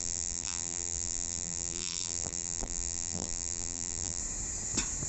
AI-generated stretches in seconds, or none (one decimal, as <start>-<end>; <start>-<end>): 0.0-4.2